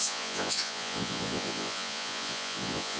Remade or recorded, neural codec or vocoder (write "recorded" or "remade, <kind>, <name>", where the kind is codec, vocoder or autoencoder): remade, vocoder, Vocos